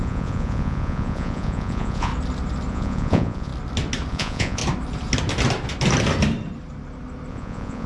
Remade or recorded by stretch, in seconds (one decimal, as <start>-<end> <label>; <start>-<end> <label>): 0.0-2.1 remade; 2.1-2.7 recorded; 2.7-3.5 remade; 3.5-4.1 recorded; 4.1-4.6 remade; 4.6-7.3 recorded; 7.3-7.9 remade